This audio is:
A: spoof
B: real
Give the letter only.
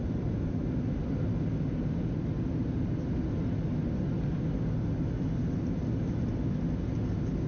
B